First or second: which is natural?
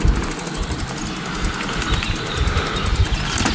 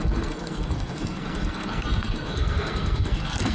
first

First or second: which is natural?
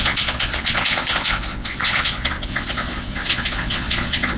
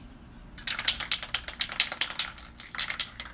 second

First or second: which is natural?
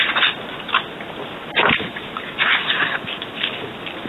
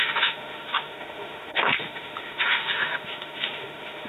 first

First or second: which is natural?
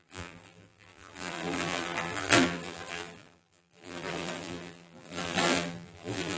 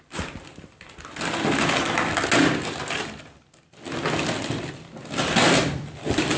second